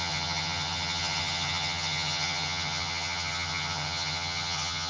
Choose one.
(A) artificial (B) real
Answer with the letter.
A